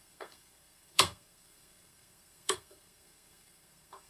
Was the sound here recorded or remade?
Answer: remade